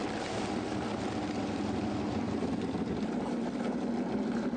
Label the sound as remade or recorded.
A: recorded